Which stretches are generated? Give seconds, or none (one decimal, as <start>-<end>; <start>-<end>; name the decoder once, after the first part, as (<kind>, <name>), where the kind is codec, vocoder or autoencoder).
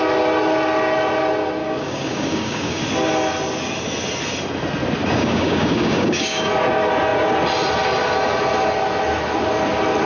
1.6-2.8 (codec, DAC); 5.0-6.5